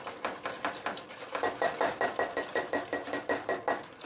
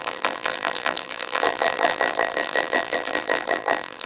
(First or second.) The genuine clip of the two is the first